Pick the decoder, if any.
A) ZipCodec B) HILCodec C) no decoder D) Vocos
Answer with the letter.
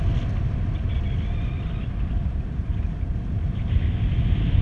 C